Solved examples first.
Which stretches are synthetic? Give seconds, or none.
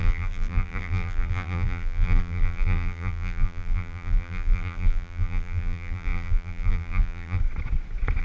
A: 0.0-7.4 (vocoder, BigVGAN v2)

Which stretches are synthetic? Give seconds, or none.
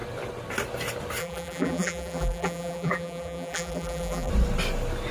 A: 1.2-4.3 (vocoder, BigVGAN v2)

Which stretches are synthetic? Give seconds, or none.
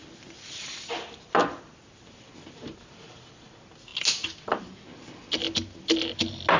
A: 0.0-3.5 (vocoder, BigVGAN v2)